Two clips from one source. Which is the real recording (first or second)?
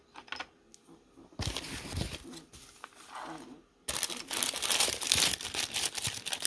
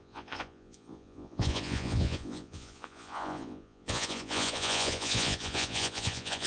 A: first